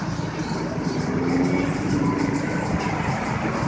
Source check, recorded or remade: recorded